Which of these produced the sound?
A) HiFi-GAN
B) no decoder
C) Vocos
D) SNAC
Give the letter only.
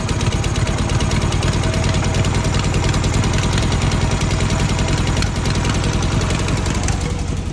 B